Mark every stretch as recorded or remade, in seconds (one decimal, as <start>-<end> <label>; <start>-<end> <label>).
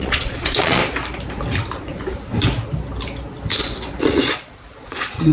0.0-0.8 remade; 0.8-4.0 recorded; 4.0-5.3 remade